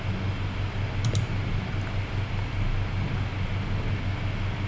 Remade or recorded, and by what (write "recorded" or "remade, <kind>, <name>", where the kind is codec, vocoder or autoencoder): recorded